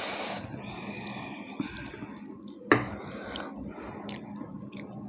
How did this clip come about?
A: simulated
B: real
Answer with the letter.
A